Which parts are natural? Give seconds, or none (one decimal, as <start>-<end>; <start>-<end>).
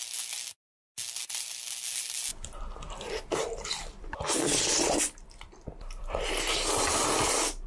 0.0-2.3; 6.3-7.7